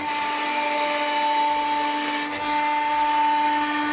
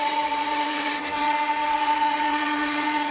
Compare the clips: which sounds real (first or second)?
first